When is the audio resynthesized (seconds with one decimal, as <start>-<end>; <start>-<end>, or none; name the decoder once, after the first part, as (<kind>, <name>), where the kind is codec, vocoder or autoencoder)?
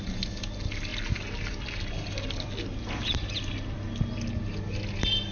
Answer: none